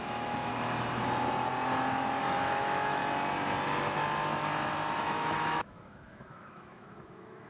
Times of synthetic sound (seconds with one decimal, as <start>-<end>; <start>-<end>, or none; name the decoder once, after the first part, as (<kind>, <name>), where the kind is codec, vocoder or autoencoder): 0.0-0.5 (autoencoder, DAC-VAE); 2.2-3.0; 5.0-7.5